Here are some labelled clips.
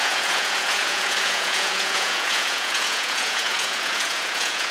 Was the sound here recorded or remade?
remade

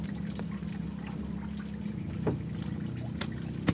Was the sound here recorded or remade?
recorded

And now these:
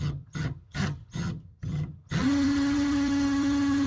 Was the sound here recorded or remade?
remade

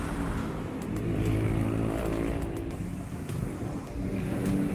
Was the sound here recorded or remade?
recorded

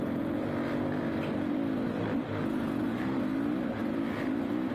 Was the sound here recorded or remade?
recorded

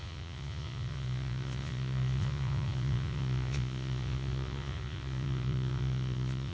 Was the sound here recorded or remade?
remade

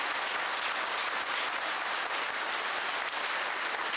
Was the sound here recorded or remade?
recorded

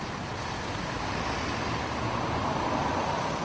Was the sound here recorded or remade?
recorded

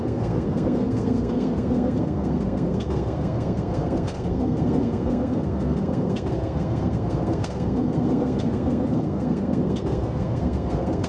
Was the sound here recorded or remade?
remade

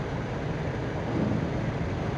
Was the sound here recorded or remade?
recorded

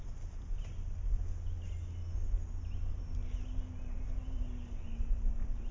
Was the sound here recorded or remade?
recorded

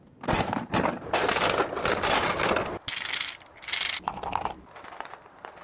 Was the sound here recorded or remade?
recorded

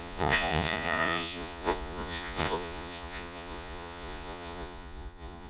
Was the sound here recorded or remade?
remade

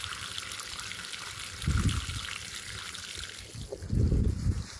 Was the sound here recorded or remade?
recorded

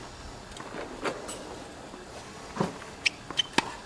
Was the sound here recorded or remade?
recorded